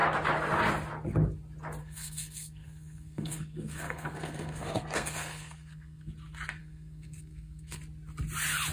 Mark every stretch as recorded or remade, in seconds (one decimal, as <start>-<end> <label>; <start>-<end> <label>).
0.0-1.8 recorded; 1.8-6.1 remade; 6.1-6.6 recorded; 6.6-7.8 remade; 7.8-8.7 recorded